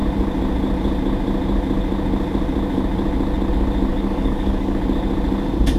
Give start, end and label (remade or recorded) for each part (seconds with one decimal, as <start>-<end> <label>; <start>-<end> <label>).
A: 0.0-3.9 recorded; 3.9-4.8 remade; 4.8-5.8 recorded